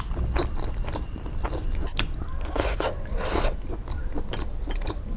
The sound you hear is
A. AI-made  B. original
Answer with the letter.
A